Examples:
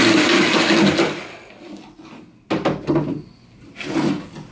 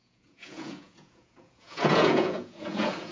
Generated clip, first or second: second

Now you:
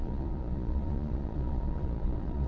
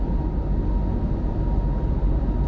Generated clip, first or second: first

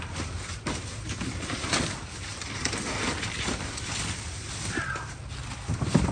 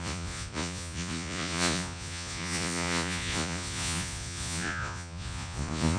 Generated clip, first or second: second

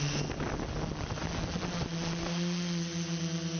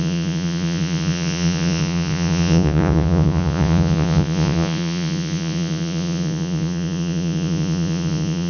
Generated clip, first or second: second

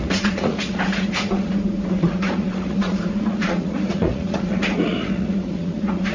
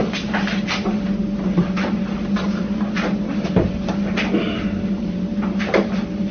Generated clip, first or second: first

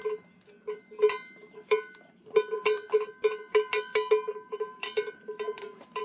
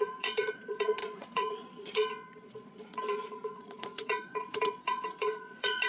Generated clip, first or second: second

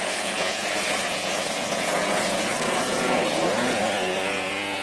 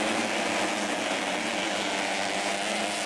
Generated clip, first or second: first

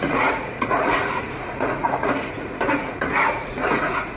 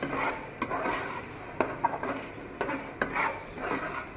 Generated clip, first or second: first